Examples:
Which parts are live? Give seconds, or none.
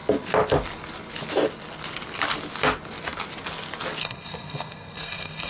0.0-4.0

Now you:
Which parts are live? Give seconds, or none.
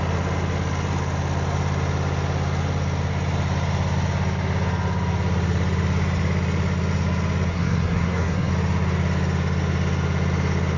0.0-7.5; 8.5-10.8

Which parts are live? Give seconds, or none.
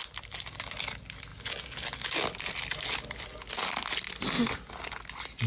0.0-5.5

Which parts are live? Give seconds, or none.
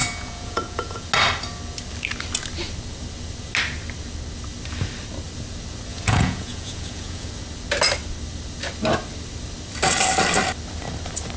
1.1-5.9; 7.3-11.4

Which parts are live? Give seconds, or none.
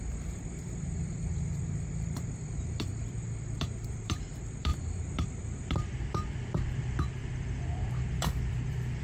none